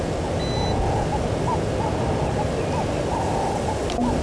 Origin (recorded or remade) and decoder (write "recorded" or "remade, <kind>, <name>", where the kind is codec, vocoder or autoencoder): recorded